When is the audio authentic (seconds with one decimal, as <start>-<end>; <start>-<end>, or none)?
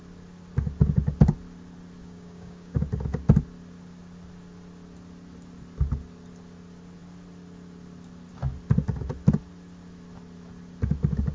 0.0-2.0; 2.8-11.3